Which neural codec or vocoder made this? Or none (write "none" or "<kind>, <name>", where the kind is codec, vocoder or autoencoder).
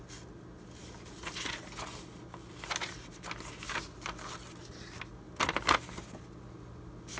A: none